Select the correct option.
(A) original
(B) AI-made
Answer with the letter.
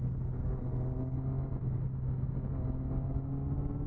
A